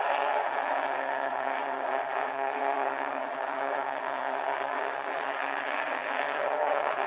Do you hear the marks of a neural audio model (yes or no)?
yes